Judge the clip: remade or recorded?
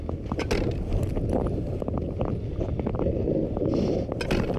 recorded